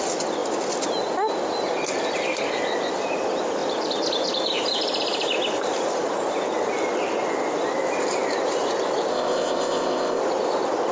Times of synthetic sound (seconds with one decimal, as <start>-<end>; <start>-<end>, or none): 9.1-10.2